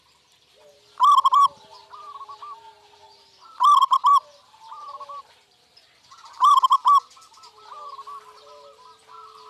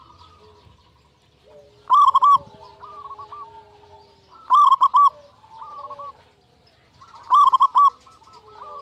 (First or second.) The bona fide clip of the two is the second